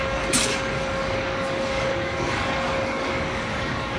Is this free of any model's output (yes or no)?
no